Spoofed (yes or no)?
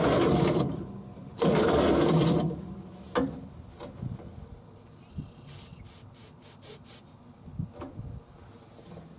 no